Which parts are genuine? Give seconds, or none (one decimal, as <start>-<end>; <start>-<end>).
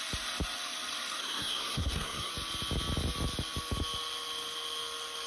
0.0-1.2; 2.3-5.3